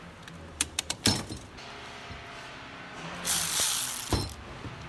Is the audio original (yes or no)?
yes